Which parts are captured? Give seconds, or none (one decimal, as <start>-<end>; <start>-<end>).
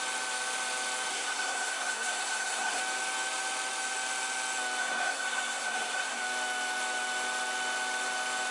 0.0-1.1; 2.8-4.8; 6.2-8.5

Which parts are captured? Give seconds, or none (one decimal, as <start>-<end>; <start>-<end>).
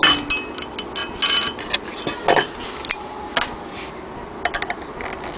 0.0-5.4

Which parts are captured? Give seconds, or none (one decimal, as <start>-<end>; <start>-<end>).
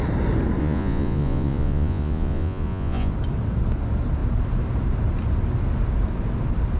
0.0-0.6; 3.1-6.8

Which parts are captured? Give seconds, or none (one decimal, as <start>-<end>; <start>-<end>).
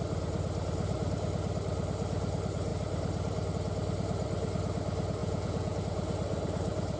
0.0-5.2; 5.8-7.0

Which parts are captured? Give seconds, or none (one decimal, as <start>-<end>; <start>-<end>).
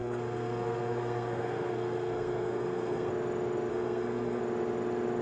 3.1-3.7; 4.4-5.2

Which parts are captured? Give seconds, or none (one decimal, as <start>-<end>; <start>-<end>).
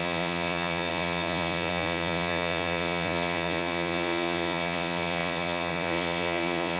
none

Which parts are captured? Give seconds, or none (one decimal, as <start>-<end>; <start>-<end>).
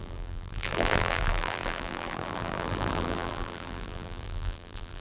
none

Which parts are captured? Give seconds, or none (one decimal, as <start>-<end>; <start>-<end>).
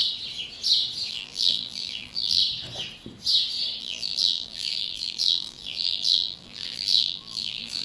0.0-1.1; 2.4-3.8